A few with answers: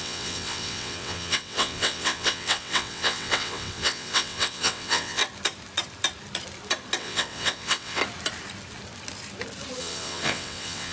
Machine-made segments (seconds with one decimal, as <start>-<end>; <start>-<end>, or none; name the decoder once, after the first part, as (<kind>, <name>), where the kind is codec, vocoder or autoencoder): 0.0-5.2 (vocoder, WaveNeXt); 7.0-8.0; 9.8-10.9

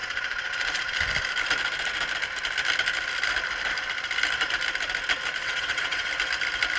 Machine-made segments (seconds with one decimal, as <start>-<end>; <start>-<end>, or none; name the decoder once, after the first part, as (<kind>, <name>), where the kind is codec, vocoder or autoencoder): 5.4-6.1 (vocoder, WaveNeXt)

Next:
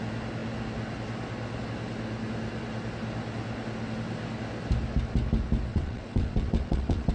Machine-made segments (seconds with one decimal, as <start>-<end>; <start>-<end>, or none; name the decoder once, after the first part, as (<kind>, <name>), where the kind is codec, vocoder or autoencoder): 5.7-7.1 (vocoder, WaveNeXt)

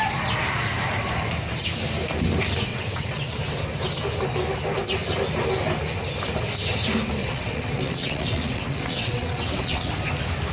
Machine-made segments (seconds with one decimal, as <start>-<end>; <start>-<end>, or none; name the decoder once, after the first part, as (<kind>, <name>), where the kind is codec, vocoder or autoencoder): 2.7-3.4 (vocoder, WaveNeXt); 7.2-9.9

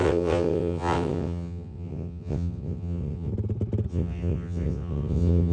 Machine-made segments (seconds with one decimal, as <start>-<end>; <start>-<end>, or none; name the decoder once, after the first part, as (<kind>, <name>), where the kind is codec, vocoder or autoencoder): 0.0-3.3 (vocoder, WaveNeXt); 3.9-5.5

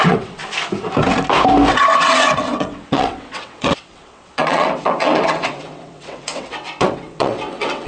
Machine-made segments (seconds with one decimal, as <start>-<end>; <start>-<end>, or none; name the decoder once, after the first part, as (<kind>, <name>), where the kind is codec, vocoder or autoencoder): 0.0-0.4 (vocoder, WaveNeXt); 1.7-7.9